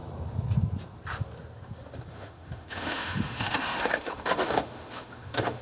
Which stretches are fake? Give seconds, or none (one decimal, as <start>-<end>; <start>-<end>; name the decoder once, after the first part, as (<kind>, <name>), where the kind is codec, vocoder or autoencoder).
2.1-5.6 (autoencoder, DAC-VAE)